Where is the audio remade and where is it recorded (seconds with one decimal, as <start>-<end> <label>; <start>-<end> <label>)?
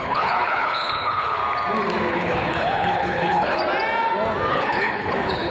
0.0-1.4 remade; 1.4-2.1 recorded; 2.1-3.6 remade; 3.6-4.5 recorded; 4.5-5.5 remade